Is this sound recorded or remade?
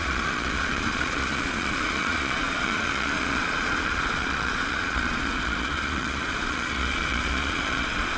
remade